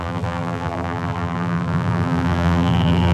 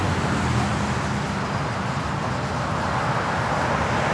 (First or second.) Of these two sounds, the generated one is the first